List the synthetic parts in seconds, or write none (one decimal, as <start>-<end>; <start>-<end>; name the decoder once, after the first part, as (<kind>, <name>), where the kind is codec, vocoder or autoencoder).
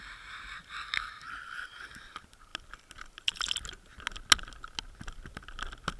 none